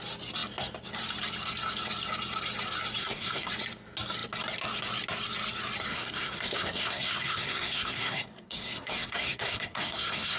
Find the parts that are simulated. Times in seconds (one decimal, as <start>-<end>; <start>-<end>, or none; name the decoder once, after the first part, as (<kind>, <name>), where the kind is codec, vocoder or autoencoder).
3.0-3.5 (codec, SNAC); 5.9-10.4